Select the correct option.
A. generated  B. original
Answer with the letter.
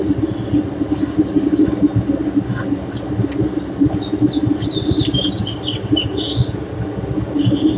B